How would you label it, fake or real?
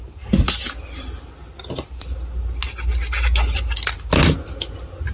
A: real